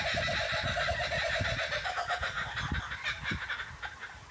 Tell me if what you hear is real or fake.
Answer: real